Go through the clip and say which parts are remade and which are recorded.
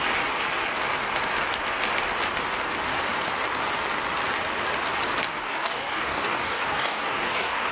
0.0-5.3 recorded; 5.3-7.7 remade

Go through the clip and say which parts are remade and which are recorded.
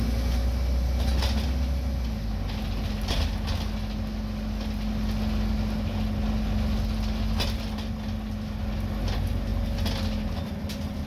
0.0-11.1 recorded